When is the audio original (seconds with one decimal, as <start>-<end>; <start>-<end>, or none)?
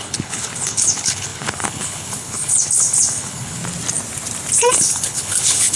3.6-4.7